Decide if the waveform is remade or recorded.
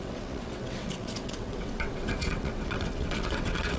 remade